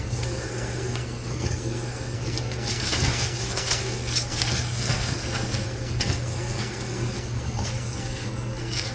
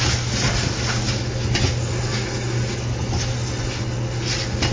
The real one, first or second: second